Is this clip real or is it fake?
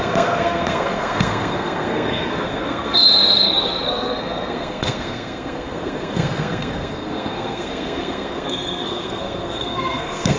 fake